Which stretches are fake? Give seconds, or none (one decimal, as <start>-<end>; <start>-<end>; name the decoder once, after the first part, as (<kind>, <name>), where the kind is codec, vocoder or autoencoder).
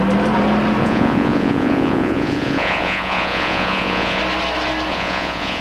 0.8-4.2 (vocoder, Vocos); 4.9-5.6